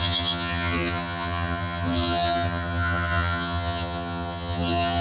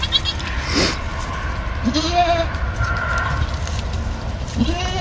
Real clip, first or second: second